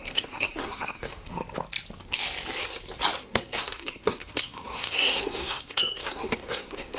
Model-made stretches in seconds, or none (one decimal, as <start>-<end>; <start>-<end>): 0.0-1.4; 3.3-7.0